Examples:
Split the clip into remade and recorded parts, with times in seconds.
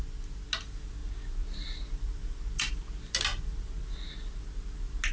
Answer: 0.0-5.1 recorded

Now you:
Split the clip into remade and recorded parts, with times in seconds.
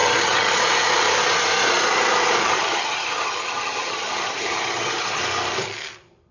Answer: 0.0-0.5 remade; 0.5-2.4 recorded; 2.4-5.2 remade; 5.2-6.3 recorded